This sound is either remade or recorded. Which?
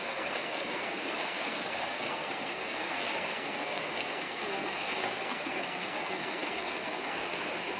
remade